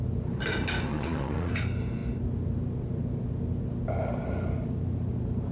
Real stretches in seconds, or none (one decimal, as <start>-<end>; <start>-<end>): 0.0-0.9; 1.5-5.5